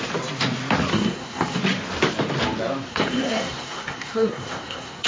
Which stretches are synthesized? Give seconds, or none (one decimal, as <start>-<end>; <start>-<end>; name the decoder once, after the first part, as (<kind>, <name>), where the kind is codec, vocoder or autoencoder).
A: 0.9-1.6 (codec, SNAC); 2.9-5.1